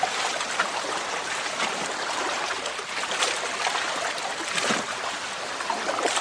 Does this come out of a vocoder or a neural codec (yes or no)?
no